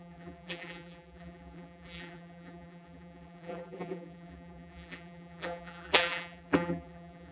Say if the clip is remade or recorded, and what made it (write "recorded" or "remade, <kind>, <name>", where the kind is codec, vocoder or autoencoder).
remade, vocoder, BigVGAN v2